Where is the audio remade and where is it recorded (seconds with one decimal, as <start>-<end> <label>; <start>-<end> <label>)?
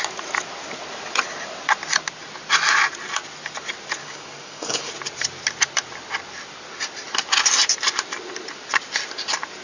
0.0-4.0 recorded; 4.0-4.9 remade; 4.9-9.6 recorded